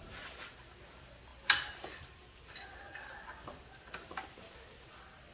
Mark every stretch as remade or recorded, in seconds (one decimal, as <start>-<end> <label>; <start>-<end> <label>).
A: 0.0-5.3 recorded